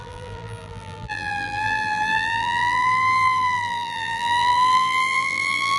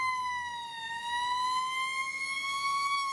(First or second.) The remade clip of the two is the first